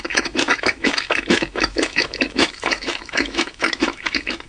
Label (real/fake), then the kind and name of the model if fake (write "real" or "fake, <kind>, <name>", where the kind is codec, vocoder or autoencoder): fake, autoencoder, DAC-VAE